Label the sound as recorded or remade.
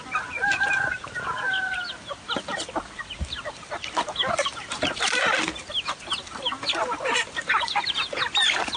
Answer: recorded